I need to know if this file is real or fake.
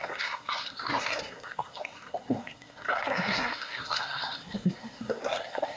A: fake